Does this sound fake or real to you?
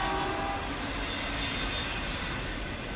real